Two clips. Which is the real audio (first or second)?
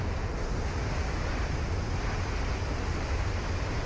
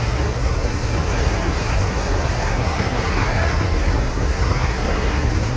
first